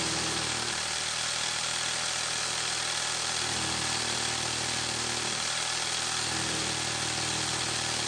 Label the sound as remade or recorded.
recorded